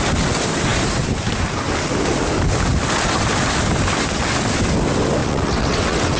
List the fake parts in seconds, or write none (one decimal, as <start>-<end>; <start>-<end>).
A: 5.2-6.2